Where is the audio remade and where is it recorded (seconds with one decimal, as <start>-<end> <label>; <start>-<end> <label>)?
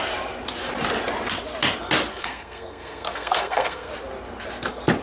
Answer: 0.0-2.1 recorded; 2.1-3.9 remade; 3.9-5.0 recorded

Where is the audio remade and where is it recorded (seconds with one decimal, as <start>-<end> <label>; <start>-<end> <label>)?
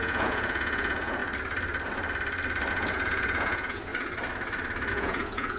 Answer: 0.0-1.2 remade; 1.2-2.7 recorded; 2.7-3.9 remade; 3.9-4.9 recorded; 4.9-5.6 remade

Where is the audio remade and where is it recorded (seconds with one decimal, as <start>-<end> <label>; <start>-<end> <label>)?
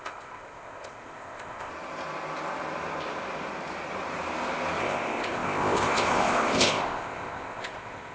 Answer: 0.0-1.7 remade; 1.7-4.8 recorded; 4.8-8.1 remade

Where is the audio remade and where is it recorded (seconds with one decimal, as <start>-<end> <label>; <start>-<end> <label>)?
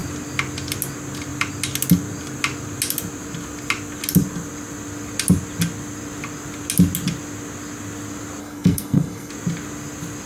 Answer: 0.0-8.4 recorded; 8.4-9.3 remade; 9.3-10.3 recorded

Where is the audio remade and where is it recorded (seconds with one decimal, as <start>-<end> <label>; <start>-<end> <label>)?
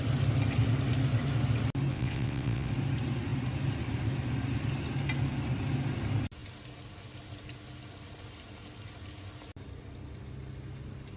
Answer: 0.0-1.9 recorded; 1.9-2.7 remade; 2.7-11.2 recorded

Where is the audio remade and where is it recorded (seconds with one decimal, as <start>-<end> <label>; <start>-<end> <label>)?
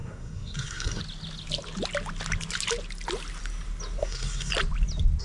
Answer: 0.0-1.0 remade; 1.0-4.0 recorded; 4.0-4.5 remade; 4.5-5.2 recorded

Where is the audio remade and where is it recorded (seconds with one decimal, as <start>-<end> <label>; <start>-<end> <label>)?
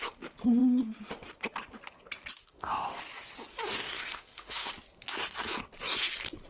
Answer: 0.0-2.4 recorded; 2.4-3.0 remade; 3.0-3.5 recorded; 3.5-4.7 remade; 4.7-6.5 recorded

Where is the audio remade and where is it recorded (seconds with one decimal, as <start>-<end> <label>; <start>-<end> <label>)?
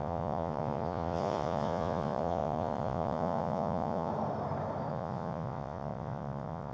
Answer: 0.0-4.1 remade; 4.1-4.9 recorded; 4.9-6.7 remade